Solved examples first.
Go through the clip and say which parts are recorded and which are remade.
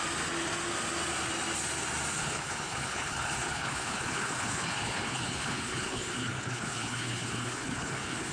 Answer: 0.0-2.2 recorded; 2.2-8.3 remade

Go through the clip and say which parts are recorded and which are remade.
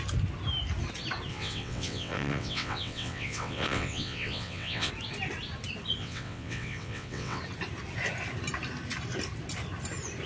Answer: 0.0-1.3 recorded; 1.3-4.9 remade; 4.9-6.0 recorded; 6.0-7.4 remade; 7.4-10.3 recorded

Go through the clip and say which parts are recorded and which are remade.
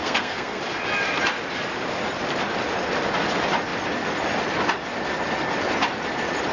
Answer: 0.0-0.6 remade; 0.6-6.5 recorded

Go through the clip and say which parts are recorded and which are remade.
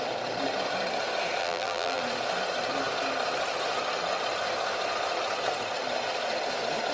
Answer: 0.0-1.4 recorded; 1.4-2.0 remade; 2.0-6.9 recorded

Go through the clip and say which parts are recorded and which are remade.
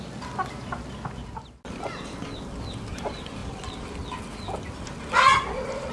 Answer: 0.0-5.9 recorded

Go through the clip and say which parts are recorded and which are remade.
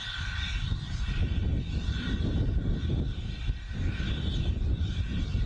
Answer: 0.0-5.5 recorded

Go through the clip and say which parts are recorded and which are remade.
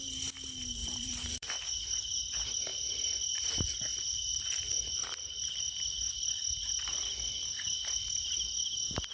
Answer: 0.0-0.8 recorded; 0.8-1.5 remade; 1.5-3.9 recorded; 3.9-5.9 remade; 5.9-9.1 recorded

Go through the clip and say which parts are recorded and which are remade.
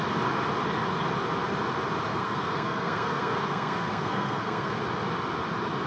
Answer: 0.0-2.1 recorded; 2.1-4.8 remade; 4.8-5.9 recorded